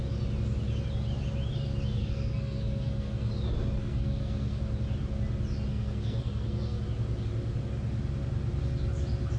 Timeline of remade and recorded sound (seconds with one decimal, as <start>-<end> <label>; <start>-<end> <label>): 0.0-2.0 recorded; 2.0-3.3 remade; 3.3-3.8 recorded; 3.8-4.6 remade; 4.6-5.7 recorded; 5.7-6.8 remade; 6.8-9.4 recorded